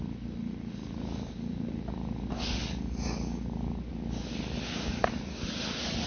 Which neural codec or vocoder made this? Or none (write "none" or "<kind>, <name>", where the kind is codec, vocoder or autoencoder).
none